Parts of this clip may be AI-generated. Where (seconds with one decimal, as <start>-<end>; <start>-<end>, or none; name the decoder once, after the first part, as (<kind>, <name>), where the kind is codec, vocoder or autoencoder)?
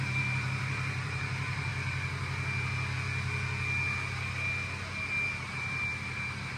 0.0-1.7 (vocoder, BigVGAN v2); 5.5-6.6